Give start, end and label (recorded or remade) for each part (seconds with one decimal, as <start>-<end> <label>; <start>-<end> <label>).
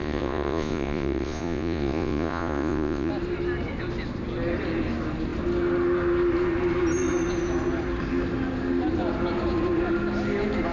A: 0.0-3.1 remade; 3.1-10.7 recorded